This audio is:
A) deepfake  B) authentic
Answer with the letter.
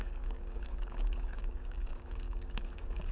A